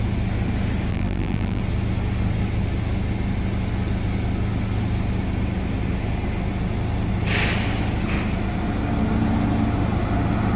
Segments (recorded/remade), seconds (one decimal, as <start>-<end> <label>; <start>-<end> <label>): 0.0-0.9 recorded; 0.9-1.6 remade; 1.6-10.6 recorded